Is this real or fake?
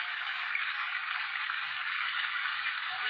fake